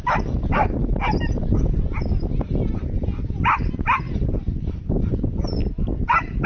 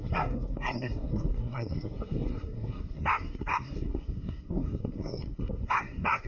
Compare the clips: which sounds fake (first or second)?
second